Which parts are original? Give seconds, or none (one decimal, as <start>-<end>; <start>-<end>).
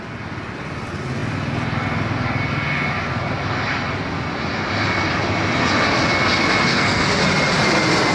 0.0-6.7; 7.2-8.1